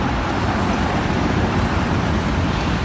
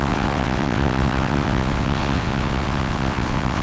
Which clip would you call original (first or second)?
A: first